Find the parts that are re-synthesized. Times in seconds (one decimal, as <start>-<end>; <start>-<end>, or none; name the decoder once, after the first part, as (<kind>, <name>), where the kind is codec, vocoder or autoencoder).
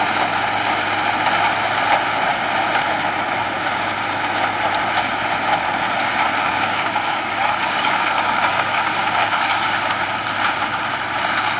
6.4-10.0 (codec, DAC)